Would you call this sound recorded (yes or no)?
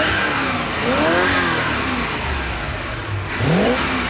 yes